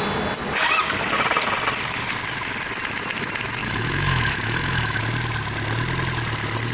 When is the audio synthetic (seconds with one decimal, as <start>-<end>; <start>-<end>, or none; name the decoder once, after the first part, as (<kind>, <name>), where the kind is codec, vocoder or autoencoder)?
3.6-5.0 (autoencoder, DAC-VAE)